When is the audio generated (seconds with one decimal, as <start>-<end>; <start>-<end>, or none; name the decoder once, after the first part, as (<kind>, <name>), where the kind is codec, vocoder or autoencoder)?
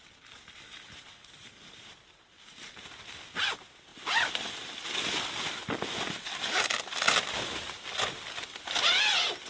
none